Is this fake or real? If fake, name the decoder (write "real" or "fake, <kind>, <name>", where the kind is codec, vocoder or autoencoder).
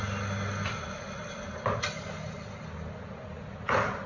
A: real